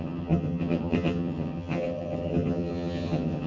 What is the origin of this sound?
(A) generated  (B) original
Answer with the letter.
A